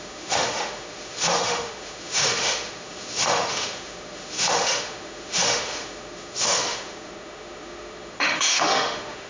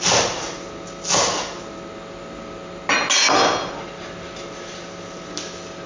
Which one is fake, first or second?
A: first